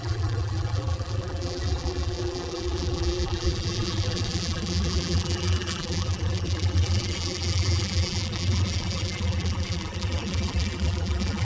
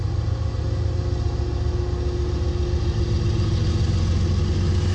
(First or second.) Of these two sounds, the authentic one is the second